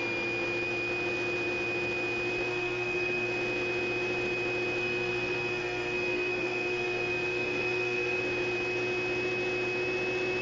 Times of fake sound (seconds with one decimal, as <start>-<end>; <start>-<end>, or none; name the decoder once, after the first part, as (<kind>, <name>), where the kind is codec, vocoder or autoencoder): 2.5-3.3 (codec, SNAC); 4.8-8.2